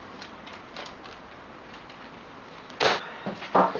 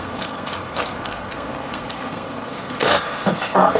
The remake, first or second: second